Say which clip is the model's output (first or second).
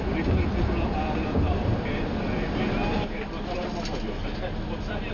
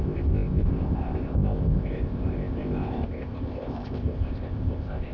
second